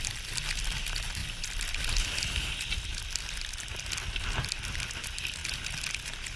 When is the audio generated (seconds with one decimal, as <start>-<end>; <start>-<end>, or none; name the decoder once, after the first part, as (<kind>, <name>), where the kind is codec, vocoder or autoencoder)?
1.2-1.8 (vocoder, BigVGAN v2)